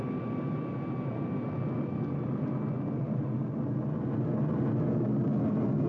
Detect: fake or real real